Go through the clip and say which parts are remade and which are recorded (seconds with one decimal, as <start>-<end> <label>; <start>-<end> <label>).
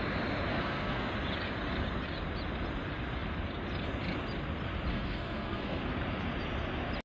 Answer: 0.0-0.5 recorded; 0.5-1.1 remade; 1.1-4.9 recorded; 4.9-5.8 remade; 5.8-7.0 recorded